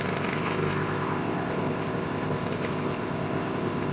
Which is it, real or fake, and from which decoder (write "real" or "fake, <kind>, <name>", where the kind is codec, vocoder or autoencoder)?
fake, codec, ZipCodec